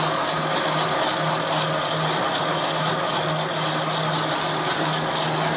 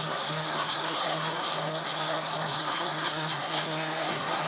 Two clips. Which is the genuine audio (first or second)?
first